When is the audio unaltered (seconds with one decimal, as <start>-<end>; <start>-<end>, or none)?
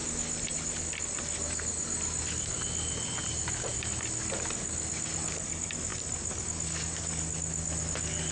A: 0.0-8.3